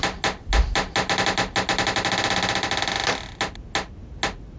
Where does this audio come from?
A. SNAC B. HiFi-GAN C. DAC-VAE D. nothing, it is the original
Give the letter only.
D